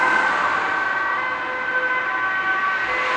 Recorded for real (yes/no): yes